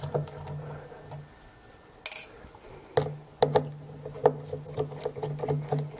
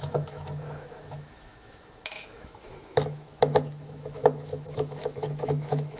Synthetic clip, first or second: second